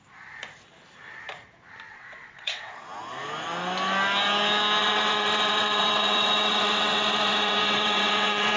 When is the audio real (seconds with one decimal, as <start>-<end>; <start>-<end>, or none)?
0.0-1.9; 2.7-4.8